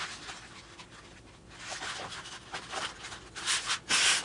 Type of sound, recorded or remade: recorded